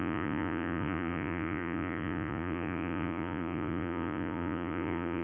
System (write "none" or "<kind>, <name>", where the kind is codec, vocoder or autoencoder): vocoder, Vocos